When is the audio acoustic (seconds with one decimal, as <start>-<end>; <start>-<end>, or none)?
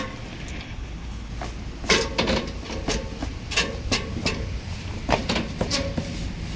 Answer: 0.0-0.5; 1.3-6.6